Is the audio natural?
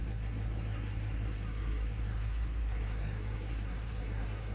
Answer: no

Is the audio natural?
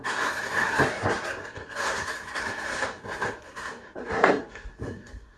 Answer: no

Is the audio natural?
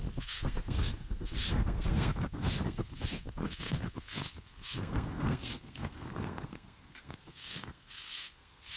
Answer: no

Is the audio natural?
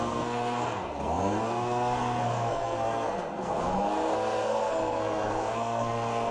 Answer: no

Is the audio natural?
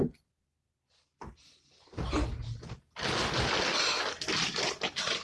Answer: yes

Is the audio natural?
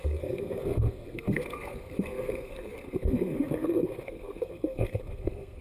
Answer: no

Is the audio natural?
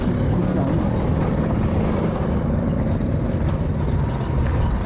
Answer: yes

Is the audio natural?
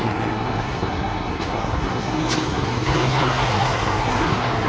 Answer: no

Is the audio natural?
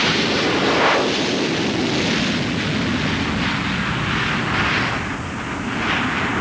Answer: yes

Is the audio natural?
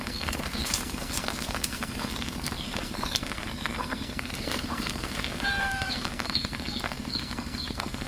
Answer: no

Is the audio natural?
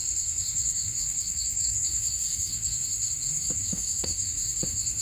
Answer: no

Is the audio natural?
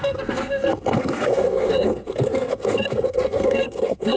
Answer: no